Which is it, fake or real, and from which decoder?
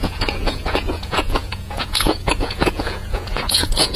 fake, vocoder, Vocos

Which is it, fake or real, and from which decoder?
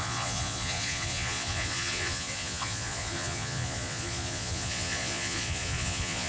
fake, vocoder, Vocos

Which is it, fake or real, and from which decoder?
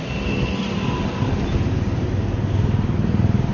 real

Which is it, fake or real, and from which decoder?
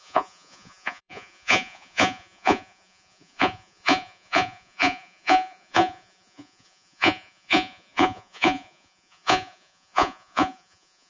fake, vocoder, Vocos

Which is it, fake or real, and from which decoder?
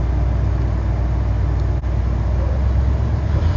real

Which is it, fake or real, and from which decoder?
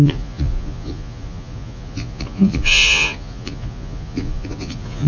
fake, vocoder, Vocos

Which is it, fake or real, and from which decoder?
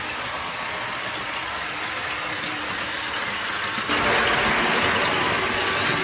real